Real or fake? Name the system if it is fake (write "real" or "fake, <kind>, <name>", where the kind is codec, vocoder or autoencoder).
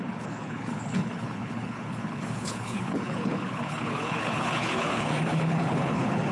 fake, codec, HILCodec